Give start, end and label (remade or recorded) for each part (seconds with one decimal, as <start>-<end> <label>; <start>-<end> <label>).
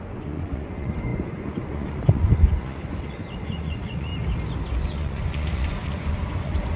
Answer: 0.0-4.1 remade; 4.1-4.8 recorded; 4.8-6.8 remade